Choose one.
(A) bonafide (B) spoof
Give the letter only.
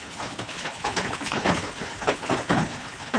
B